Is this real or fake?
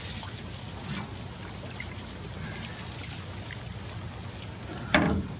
real